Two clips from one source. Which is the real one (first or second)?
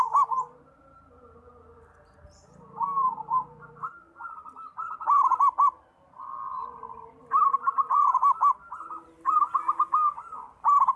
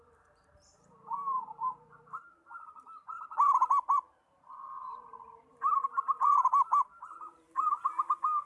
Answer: first